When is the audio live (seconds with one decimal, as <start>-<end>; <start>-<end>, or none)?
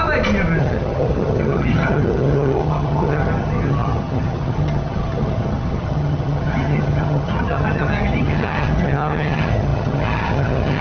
0.0-0.6